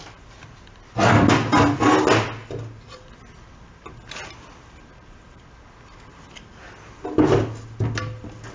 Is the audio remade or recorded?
recorded